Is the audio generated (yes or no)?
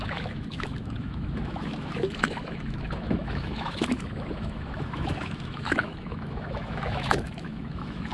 yes